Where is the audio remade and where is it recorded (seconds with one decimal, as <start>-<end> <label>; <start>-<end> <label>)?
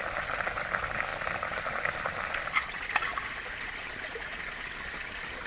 0.0-1.1 remade; 1.1-2.0 recorded; 2.0-3.1 remade; 3.1-4.9 recorded; 4.9-5.5 remade